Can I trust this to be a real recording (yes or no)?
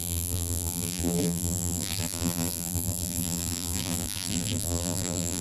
no